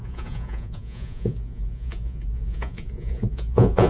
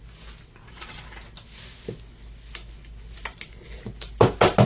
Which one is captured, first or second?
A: second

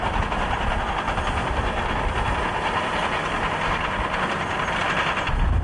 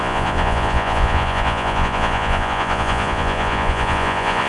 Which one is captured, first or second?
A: first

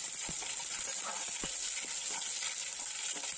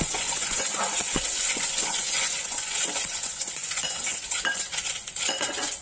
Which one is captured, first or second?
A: first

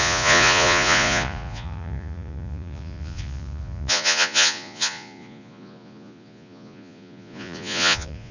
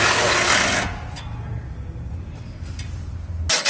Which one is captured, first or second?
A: second